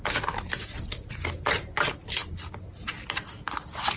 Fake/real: real